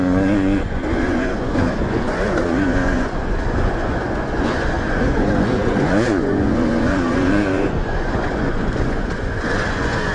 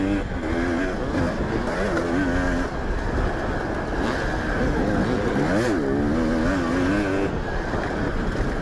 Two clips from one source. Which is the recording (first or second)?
second